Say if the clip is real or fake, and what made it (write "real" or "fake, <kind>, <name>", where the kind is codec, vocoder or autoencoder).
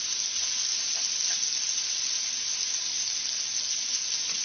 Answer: real